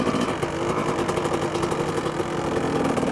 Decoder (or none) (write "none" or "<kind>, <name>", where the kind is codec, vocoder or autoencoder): none